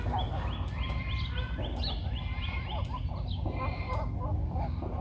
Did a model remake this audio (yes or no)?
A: no